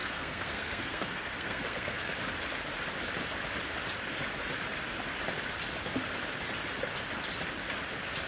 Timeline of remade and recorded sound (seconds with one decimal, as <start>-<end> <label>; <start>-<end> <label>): 0.0-2.1 remade; 2.1-8.3 recorded